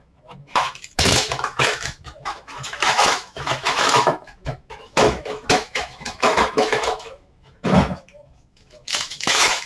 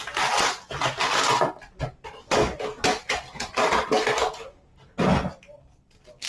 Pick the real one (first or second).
second